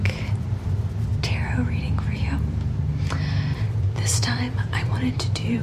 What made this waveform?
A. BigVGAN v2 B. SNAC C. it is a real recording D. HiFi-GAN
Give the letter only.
A